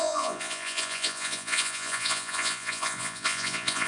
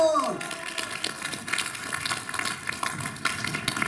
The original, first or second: second